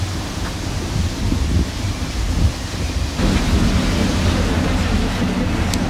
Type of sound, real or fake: real